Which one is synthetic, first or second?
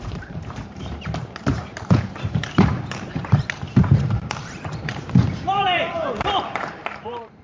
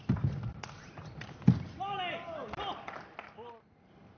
first